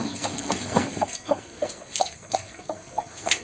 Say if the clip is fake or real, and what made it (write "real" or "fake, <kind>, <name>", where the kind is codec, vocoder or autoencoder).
fake, codec, SNAC